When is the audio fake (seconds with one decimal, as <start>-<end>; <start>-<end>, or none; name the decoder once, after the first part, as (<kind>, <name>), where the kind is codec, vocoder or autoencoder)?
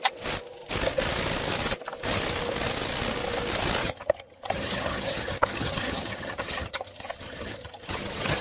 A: 3.8-8.4 (vocoder, HiFi-GAN)